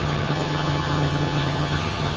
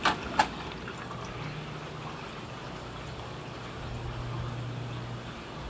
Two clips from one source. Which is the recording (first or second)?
second